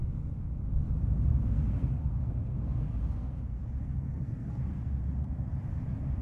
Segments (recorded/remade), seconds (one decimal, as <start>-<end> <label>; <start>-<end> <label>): 0.0-1.3 recorded; 1.3-5.0 remade; 5.0-6.2 recorded